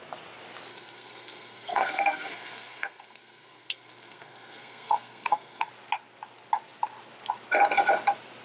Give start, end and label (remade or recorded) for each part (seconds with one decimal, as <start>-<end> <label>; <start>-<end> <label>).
0.0-0.7 recorded; 0.7-5.7 remade; 5.7-8.4 recorded